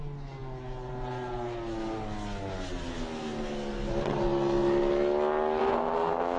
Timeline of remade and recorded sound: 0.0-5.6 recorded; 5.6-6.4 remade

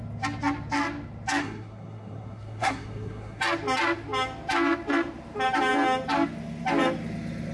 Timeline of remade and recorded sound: 0.0-1.4 recorded; 1.4-3.4 remade; 3.4-7.5 recorded